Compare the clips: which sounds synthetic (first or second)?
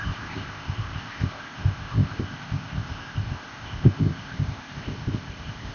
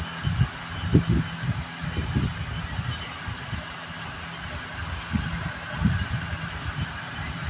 first